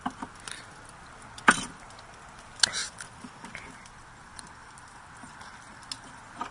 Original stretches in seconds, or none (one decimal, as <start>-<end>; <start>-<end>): 0.0-6.5